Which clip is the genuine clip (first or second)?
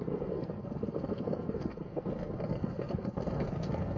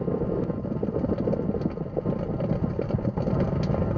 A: second